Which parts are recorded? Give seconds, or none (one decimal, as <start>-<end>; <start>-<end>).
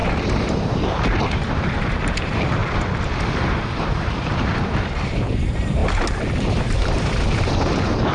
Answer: 2.6-3.3; 5.8-6.4